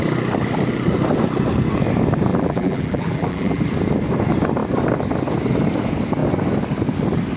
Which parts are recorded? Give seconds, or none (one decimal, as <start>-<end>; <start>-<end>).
0.0-2.3; 3.6-7.4